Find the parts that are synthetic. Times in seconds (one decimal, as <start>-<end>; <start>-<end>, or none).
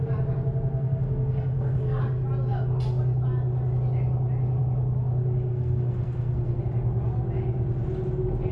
0.7-2.0; 5.5-6.6